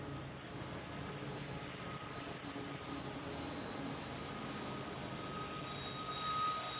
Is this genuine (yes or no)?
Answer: yes